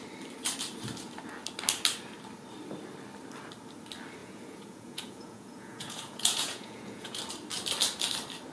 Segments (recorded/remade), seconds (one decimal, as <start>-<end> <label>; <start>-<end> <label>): 0.0-4.2 recorded; 4.2-7.2 remade; 7.2-8.5 recorded